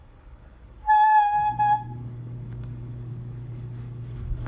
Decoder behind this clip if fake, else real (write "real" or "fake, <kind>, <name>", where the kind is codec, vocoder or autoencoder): fake, codec, DAC